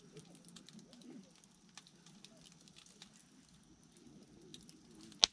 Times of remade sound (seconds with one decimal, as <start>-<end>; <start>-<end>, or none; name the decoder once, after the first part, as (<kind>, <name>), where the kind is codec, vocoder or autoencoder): none